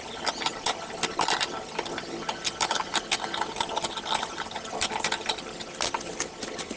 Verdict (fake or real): real